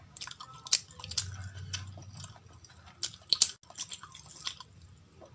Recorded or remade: recorded